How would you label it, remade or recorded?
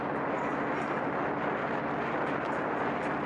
recorded